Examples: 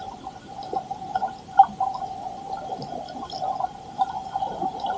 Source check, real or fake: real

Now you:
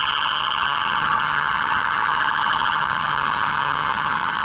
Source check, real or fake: fake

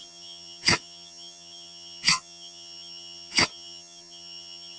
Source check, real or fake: fake